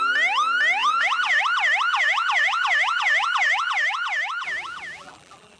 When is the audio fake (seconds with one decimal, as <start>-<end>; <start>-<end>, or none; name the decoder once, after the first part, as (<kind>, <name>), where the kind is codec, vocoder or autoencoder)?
0.8-1.4 (vocoder, BigVGAN v2); 1.9-5.6